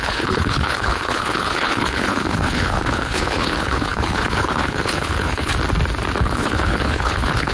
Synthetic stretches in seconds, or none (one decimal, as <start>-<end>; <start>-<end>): 0.0-5.5; 6.2-7.5